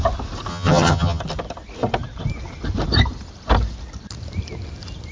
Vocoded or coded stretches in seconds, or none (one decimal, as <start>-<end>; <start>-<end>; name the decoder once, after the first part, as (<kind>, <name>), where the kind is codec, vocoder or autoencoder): 0.5-1.2 (vocoder, HiFi-GAN)